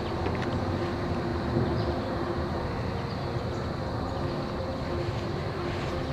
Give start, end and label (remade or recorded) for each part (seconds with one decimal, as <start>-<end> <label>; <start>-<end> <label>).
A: 0.0-1.3 recorded; 1.3-2.8 remade; 2.8-6.1 recorded